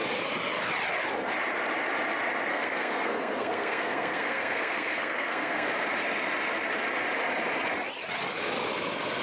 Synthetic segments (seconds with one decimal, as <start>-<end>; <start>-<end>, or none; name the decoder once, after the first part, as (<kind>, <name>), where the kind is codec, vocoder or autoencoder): 2.5-5.7 (codec, SNAC)